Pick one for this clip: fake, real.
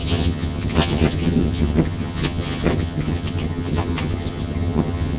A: fake